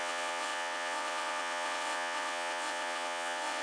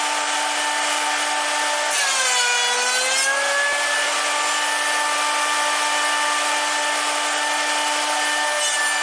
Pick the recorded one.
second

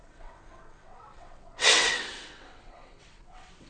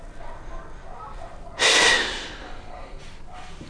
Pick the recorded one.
second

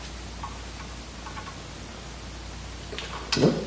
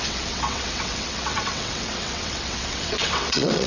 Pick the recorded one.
first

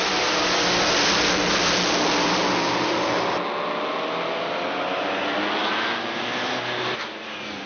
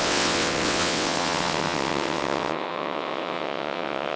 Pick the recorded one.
first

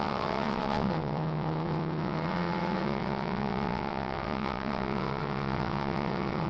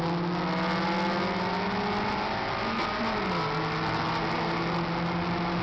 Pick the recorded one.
second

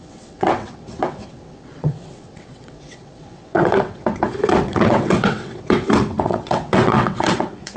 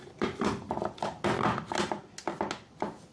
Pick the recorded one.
second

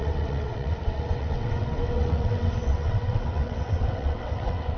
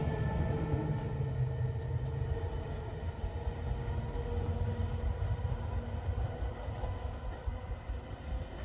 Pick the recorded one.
second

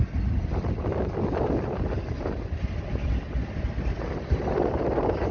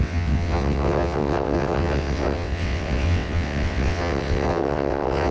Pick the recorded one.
first